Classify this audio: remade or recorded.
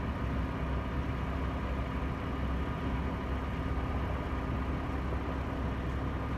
recorded